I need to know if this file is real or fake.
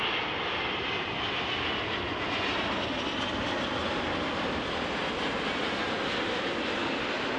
real